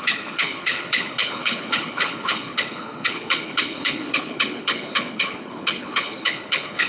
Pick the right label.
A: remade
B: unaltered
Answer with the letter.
A